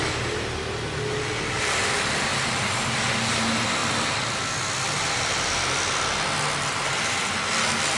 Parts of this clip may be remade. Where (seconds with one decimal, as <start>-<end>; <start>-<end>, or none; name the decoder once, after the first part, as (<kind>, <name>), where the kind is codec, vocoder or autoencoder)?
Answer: 2.3-2.9 (vocoder, BigVGAN v2)